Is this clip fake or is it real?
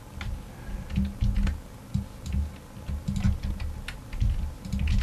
real